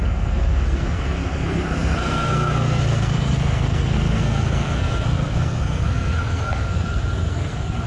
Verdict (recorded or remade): remade